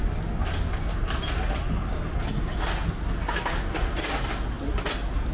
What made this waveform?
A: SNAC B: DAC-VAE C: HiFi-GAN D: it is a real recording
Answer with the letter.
D